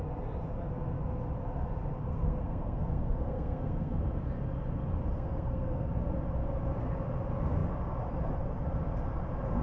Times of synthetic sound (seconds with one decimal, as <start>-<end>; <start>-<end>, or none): 2.0-4.0; 5.1-5.9